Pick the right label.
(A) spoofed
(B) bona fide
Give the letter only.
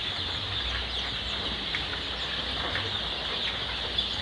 B